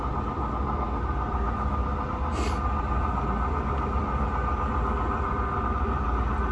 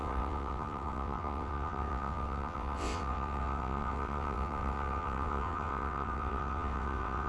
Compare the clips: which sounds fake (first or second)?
second